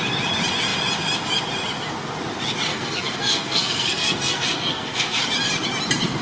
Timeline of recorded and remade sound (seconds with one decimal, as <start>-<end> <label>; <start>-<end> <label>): 0.0-2.7 recorded; 2.7-5.2 remade; 5.2-6.2 recorded